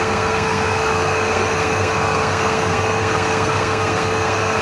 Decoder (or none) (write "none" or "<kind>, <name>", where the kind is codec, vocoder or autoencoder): codec, SNAC